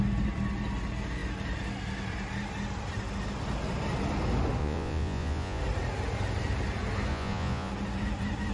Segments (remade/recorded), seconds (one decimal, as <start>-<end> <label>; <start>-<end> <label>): 0.0-4.6 recorded; 4.6-5.6 remade; 5.6-7.1 recorded; 7.1-7.7 remade; 7.7-8.5 recorded